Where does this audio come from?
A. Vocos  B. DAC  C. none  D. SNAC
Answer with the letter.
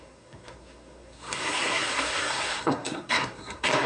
D